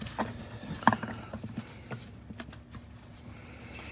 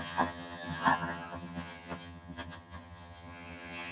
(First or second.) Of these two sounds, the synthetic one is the second